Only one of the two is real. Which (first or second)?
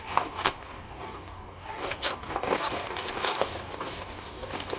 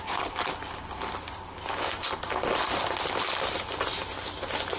second